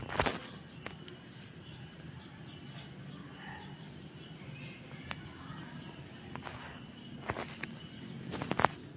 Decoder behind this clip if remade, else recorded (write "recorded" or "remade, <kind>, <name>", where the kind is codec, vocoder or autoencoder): recorded